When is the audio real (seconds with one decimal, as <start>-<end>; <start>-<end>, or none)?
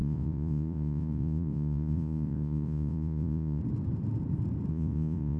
3.6-4.7